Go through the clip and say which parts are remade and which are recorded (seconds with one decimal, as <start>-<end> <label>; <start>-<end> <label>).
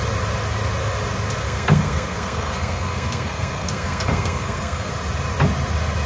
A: 0.0-1.4 recorded; 1.4-4.9 remade; 4.9-6.1 recorded